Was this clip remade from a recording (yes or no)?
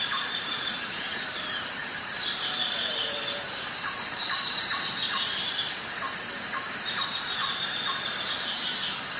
yes